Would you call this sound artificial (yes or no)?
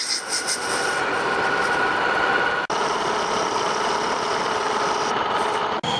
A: no